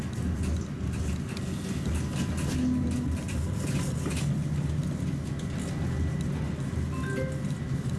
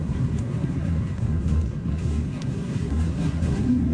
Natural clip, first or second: first